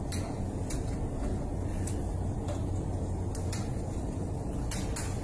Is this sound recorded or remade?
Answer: recorded